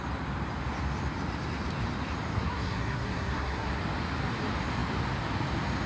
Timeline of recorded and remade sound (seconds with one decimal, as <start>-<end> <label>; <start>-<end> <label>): 0.0-2.3 recorded; 2.3-3.8 remade; 3.8-5.9 recorded